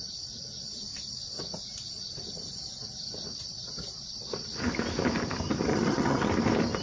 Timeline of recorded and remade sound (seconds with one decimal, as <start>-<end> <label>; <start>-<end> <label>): 0.0-5.7 recorded; 5.7-6.3 remade; 6.3-6.8 recorded

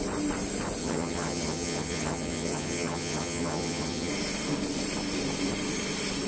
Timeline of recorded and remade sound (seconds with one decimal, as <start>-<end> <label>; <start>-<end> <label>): 0.0-0.8 recorded; 0.8-4.1 remade; 4.1-6.3 recorded

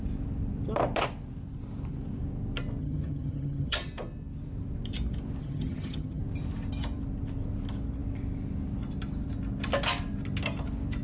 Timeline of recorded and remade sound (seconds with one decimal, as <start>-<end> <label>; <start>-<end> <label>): 0.0-2.8 recorded; 2.8-3.9 remade; 3.9-5.4 recorded; 5.4-6.2 remade; 6.2-11.0 recorded

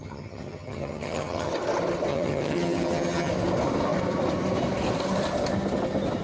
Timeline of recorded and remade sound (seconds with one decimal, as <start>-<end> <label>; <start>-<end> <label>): 0.0-1.5 remade; 1.5-2.1 recorded; 2.1-3.3 remade; 3.3-6.2 recorded

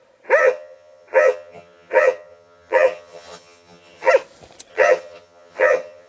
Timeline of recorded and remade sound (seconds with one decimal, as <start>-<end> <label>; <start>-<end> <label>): 0.0-0.4 recorded; 0.4-4.1 remade; 4.1-4.7 recorded; 4.7-6.1 remade

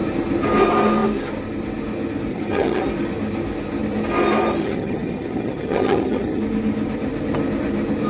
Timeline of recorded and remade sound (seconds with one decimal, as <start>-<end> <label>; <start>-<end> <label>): 0.0-2.3 recorded; 2.3-2.8 remade; 2.8-4.6 recorded; 4.6-6.4 remade; 6.4-8.1 recorded

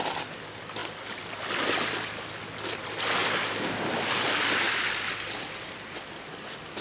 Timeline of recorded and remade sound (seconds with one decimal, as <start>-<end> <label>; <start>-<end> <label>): 0.0-6.8 recorded